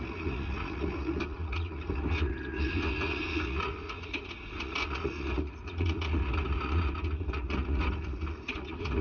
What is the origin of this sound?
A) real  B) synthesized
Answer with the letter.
B